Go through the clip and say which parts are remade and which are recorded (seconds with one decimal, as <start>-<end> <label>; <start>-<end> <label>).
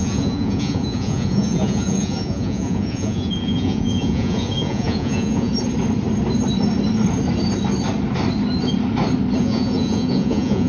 0.0-5.5 remade; 5.5-9.4 recorded; 9.4-10.7 remade